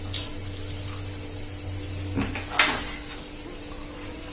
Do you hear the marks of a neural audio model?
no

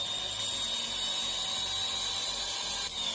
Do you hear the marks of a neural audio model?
no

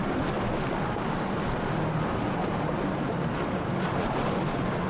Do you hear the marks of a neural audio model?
no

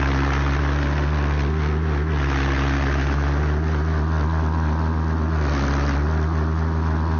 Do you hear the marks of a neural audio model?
no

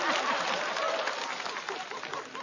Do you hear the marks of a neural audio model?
no